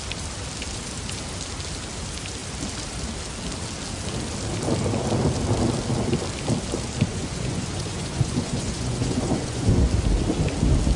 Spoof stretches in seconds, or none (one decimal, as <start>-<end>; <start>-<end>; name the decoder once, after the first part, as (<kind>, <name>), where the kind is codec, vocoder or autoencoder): 7.1-9.9 (vocoder, Vocos)